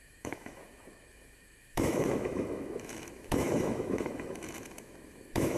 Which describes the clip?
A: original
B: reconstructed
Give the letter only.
B